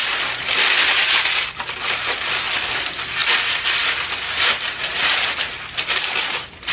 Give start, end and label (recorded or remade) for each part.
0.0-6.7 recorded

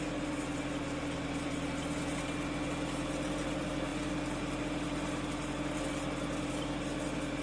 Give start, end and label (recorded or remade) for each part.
0.0-7.4 recorded

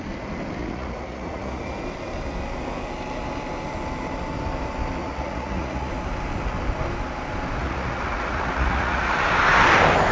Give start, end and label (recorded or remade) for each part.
0.0-0.6 recorded; 0.6-1.6 remade; 1.6-5.0 recorded; 5.0-5.9 remade; 5.9-7.6 recorded; 7.6-9.3 remade; 9.3-10.1 recorded

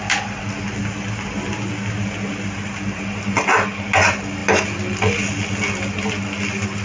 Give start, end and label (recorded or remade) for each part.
0.0-6.8 recorded

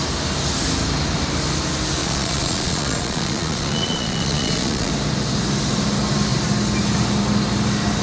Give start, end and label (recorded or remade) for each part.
0.0-2.0 recorded; 2.0-4.9 remade; 4.9-8.0 recorded

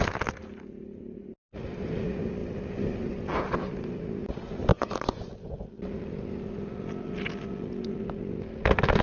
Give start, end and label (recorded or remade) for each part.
0.0-4.7 recorded; 4.7-5.7 remade; 5.7-9.0 recorded

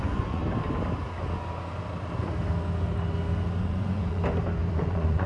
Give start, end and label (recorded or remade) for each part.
0.0-0.4 remade; 0.4-3.6 recorded; 3.6-4.2 remade; 4.2-4.7 recorded; 4.7-5.3 remade